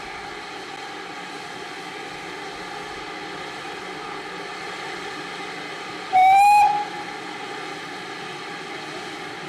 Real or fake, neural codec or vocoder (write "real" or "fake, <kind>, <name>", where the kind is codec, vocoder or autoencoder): real